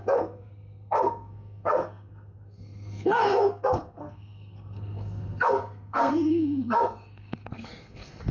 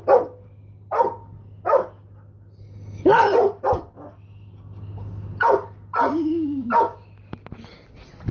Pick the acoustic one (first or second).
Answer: second